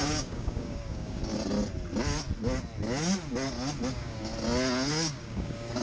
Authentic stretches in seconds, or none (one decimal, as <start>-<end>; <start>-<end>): 1.2-3.9; 4.3-4.9